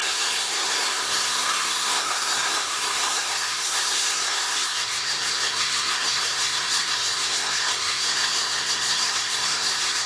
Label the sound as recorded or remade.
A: remade